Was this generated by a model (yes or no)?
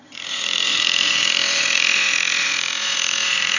yes